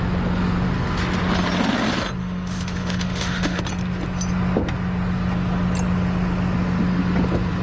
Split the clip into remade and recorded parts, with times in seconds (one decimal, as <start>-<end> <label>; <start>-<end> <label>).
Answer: 0.0-2.2 recorded; 2.2-3.6 remade; 3.6-7.6 recorded